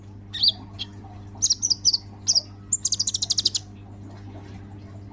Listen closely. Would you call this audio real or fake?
real